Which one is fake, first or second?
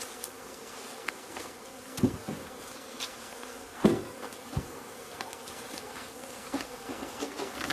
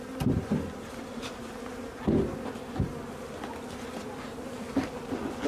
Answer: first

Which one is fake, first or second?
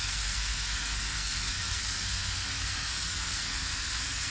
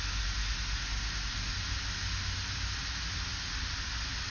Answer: first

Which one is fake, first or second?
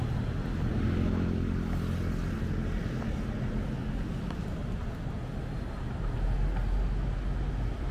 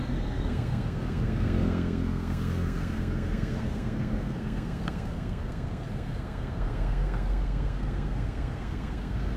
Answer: second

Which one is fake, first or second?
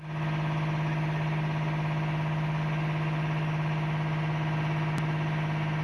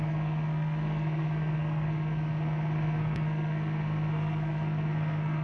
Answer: second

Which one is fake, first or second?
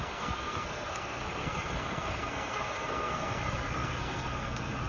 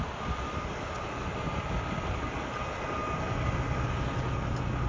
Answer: first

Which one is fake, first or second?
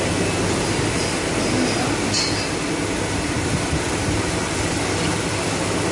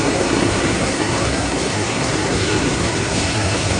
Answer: second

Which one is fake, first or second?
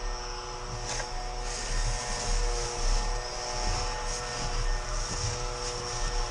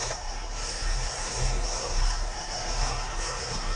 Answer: second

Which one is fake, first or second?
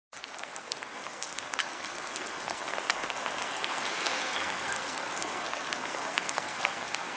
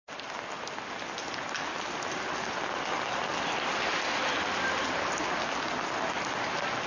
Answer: first